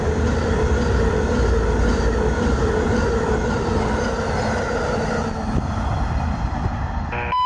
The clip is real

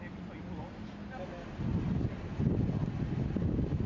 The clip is real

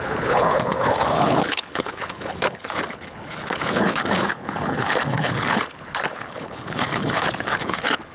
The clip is fake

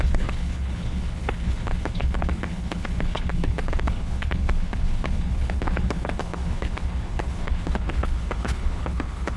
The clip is fake